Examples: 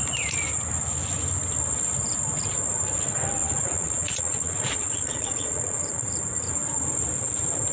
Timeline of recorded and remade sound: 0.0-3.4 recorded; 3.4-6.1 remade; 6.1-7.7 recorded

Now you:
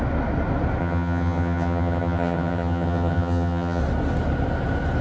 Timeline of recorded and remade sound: 0.0-0.8 recorded; 0.8-3.8 remade; 3.8-5.0 recorded

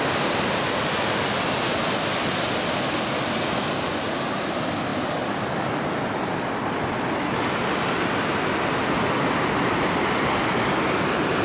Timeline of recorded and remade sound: 0.0-11.4 recorded

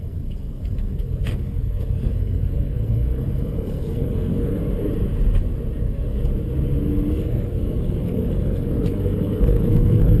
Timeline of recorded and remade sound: 0.0-4.6 remade; 4.6-5.8 recorded; 5.8-6.2 remade; 6.2-7.1 recorded; 7.1-10.2 remade

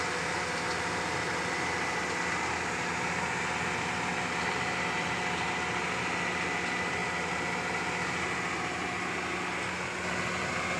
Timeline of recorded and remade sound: 0.0-10.8 recorded

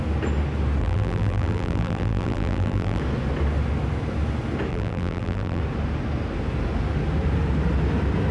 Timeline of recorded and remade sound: 0.0-0.8 recorded; 0.8-3.0 remade; 3.0-4.7 recorded; 4.7-5.6 remade; 5.6-8.3 recorded

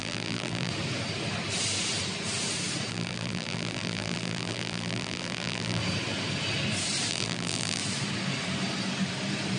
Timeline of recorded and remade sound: 0.0-0.7 remade; 0.7-2.9 recorded; 2.9-5.8 remade; 5.8-7.1 recorded; 7.1-7.8 remade; 7.8-9.6 recorded

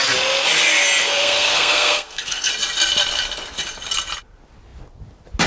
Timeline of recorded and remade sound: 0.0-1.0 recorded; 1.0-2.5 remade; 2.5-5.5 recorded